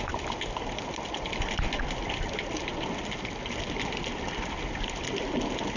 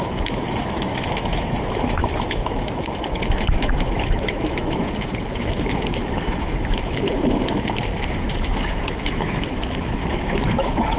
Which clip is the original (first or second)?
first